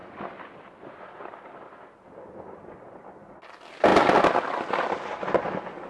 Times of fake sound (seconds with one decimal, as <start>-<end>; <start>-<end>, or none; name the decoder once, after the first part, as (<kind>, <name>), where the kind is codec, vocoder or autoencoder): none